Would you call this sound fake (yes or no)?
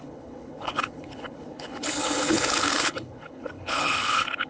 yes